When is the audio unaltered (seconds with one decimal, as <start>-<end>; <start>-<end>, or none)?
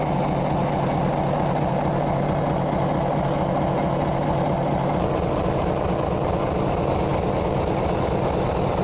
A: 0.0-8.8